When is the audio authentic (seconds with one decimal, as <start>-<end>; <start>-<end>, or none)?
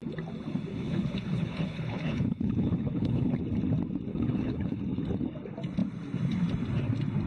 0.0-0.7; 3.4-4.1; 4.8-7.3